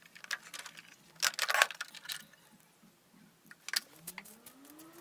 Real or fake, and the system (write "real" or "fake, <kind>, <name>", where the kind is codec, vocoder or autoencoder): real